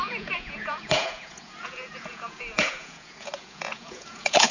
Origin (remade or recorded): remade